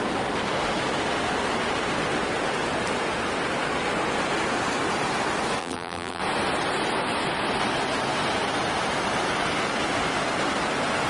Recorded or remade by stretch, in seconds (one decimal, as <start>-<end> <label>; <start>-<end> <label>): 0.0-5.6 recorded; 5.6-6.2 remade; 6.2-11.1 recorded

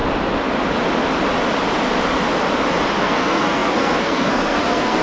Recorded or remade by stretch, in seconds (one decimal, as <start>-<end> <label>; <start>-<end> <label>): 0.0-3.0 recorded; 3.0-5.0 remade

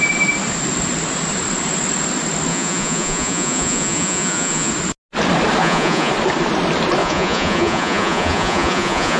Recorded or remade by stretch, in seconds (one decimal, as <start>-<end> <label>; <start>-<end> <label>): 0.0-2.5 recorded; 2.5-4.7 remade; 4.7-5.6 recorded; 5.6-6.1 remade; 6.1-7.0 recorded; 7.0-9.2 remade

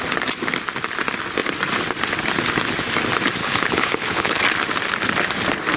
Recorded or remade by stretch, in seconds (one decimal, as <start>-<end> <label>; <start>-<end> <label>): 0.0-3.4 recorded; 3.4-4.4 remade; 4.4-5.8 recorded

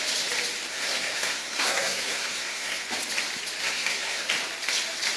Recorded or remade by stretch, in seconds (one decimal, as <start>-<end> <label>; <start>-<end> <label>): 0.0-0.7 recorded; 0.7-2.8 remade; 2.8-3.6 recorded; 3.6-4.3 remade; 4.3-5.2 recorded

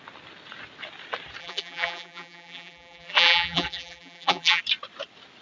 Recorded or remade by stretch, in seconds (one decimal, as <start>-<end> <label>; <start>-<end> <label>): 0.0-1.4 recorded; 1.4-4.6 remade; 4.6-5.4 recorded